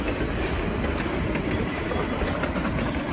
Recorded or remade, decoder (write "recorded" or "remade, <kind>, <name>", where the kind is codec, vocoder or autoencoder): recorded